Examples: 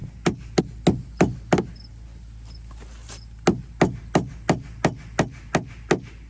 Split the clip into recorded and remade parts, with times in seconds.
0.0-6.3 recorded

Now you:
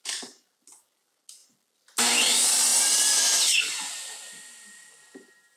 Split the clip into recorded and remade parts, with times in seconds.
0.0-5.6 recorded

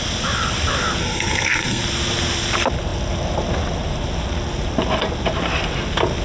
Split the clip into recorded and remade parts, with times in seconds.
0.0-1.0 recorded; 1.0-1.8 remade; 1.8-6.2 recorded

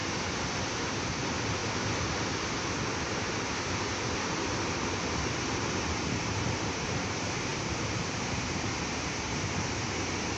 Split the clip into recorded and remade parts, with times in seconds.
0.0-0.8 recorded; 0.8-1.6 remade; 1.6-6.2 recorded; 6.2-10.4 remade

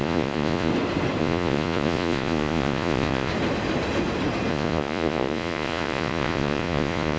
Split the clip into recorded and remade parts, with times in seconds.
0.0-0.7 remade; 0.7-1.2 recorded; 1.2-3.3 remade; 3.3-4.5 recorded; 4.5-7.2 remade